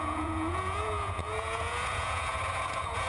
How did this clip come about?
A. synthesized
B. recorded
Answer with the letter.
A